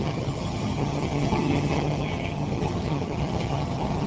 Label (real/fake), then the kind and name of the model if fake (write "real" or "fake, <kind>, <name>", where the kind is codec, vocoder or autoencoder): fake, vocoder, HiFi-GAN